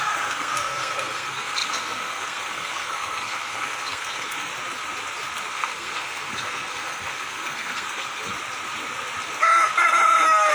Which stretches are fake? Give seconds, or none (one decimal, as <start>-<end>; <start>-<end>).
0.0-4.5; 5.5-8.3